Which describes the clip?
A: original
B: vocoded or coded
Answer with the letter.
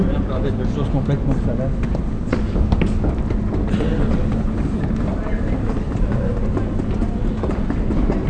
A